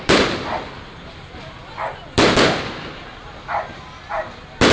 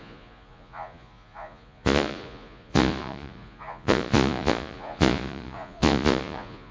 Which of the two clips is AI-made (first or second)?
second